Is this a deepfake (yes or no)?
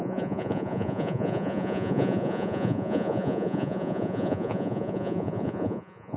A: yes